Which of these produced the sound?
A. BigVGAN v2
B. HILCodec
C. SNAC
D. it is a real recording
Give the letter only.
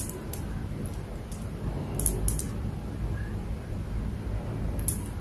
D